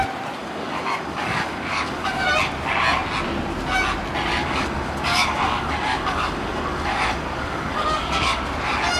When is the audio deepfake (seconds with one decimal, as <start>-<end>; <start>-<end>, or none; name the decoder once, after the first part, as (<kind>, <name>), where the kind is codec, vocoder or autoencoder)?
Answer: 0.4-2.3 (codec, DAC); 4.4-8.4